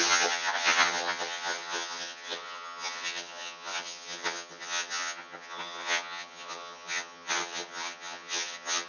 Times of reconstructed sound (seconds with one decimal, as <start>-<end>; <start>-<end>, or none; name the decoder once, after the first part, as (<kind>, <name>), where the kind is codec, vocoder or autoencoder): 0.0-8.9 (vocoder, HiFi-GAN)